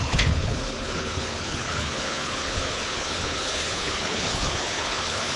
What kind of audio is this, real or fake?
fake